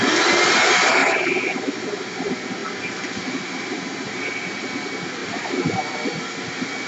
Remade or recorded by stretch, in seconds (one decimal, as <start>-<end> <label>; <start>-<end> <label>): 0.0-1.0 recorded; 1.0-1.8 remade; 1.8-5.2 recorded; 5.2-6.2 remade; 6.2-6.9 recorded